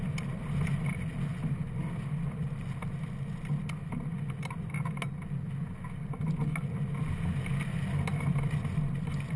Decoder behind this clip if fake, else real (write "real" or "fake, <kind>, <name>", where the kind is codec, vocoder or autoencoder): real